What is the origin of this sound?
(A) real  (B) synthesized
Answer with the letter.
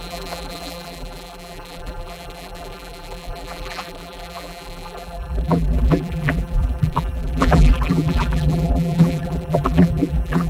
B